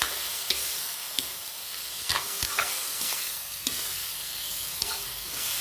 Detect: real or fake fake